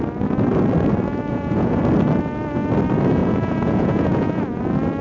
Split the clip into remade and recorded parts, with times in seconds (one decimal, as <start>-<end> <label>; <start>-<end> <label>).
0.0-1.3 recorded; 1.3-1.8 remade; 1.8-3.2 recorded; 3.2-4.6 remade; 4.6-5.0 recorded